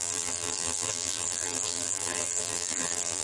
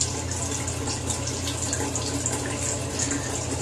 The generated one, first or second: first